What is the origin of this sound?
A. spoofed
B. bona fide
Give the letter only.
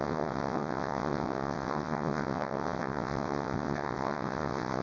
A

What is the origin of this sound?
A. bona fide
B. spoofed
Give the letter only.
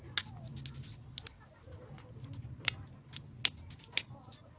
A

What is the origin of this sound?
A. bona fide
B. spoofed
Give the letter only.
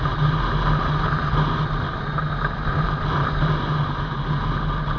A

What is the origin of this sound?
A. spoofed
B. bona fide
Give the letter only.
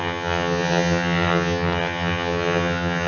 A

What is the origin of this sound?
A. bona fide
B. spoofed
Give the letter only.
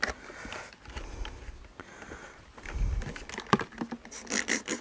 A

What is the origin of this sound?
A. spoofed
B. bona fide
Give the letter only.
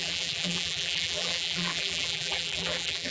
A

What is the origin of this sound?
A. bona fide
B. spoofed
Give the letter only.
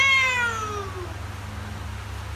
A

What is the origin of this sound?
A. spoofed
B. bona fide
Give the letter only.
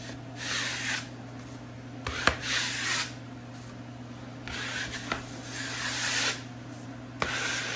B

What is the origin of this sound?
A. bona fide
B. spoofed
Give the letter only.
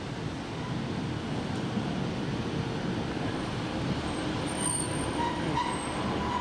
A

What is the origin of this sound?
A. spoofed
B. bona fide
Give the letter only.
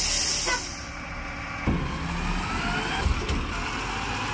B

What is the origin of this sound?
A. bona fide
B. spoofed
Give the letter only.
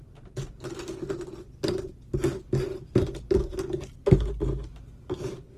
A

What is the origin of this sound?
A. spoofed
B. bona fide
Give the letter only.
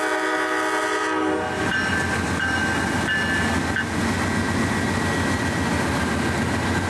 B